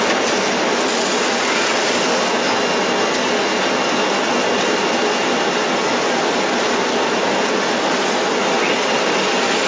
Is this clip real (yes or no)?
yes